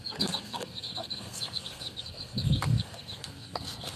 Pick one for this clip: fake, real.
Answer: fake